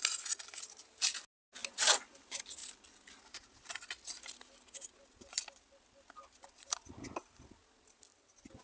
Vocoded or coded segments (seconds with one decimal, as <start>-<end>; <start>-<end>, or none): none